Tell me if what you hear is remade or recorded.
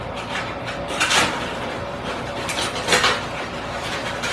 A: recorded